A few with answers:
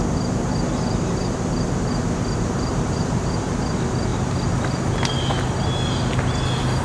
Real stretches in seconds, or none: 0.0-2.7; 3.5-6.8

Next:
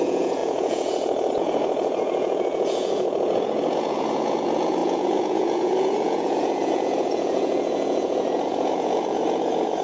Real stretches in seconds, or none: none

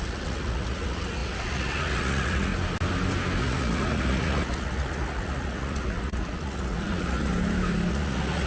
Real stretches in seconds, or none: 2.5-3.4; 7.3-7.9

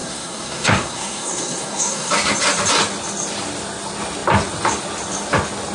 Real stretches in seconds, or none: 2.1-5.7

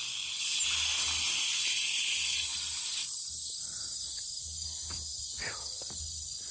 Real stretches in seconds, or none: 0.0-6.5